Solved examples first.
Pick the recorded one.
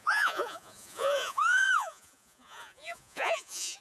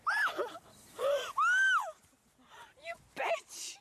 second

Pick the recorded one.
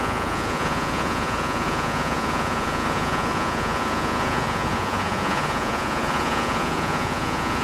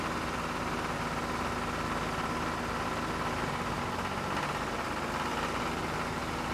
second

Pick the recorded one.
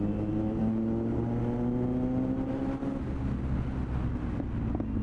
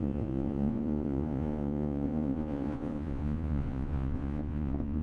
first